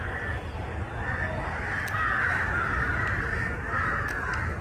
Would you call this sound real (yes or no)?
yes